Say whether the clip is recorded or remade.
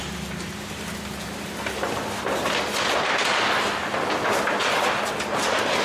recorded